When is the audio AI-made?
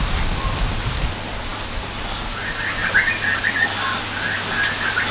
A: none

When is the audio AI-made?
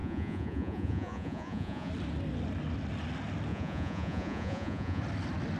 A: 0.0-1.9 (vocoder, Vocos); 3.5-5.0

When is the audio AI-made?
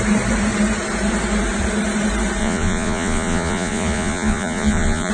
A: 2.4-5.1 (vocoder, Vocos)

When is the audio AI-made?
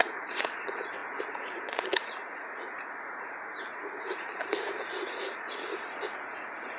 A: 0.0-6.8 (vocoder, Vocos)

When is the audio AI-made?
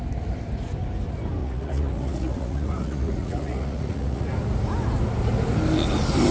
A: 1.4-4.3 (vocoder, Vocos)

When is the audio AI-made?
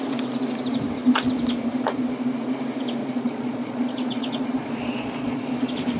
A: 3.0-5.5 (vocoder, Vocos)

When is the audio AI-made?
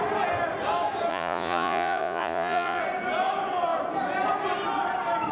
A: 1.1-2.8 (vocoder, Vocos)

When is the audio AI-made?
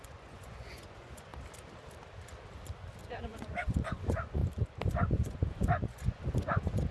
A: 0.0-1.3 (vocoder, Vocos); 3.0-4.4; 4.9-6.9